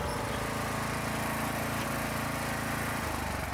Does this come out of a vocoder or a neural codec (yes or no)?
no